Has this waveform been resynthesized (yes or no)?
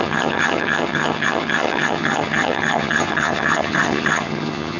yes